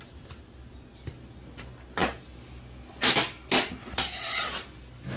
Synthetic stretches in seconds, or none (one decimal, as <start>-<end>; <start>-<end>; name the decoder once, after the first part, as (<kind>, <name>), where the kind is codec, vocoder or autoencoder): none